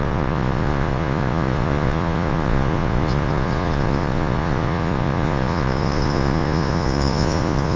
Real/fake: fake